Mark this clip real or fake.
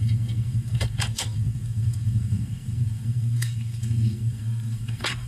fake